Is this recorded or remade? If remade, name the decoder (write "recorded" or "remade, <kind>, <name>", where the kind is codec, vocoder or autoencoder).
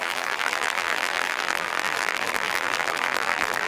remade, vocoder, BigVGAN v2